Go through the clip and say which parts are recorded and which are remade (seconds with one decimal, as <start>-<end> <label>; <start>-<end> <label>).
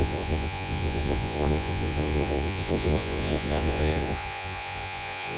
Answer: 0.0-5.4 remade